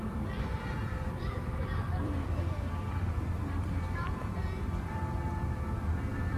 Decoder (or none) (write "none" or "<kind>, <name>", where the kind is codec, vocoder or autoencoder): vocoder, BigVGAN v2